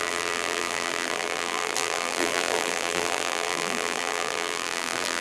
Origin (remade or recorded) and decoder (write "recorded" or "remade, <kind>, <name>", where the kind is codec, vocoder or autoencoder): remade, vocoder, BigVGAN v2